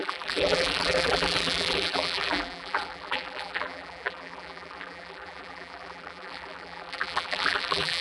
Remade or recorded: remade